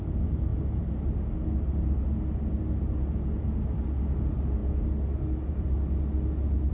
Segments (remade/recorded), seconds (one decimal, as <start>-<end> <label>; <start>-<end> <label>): 0.0-6.7 recorded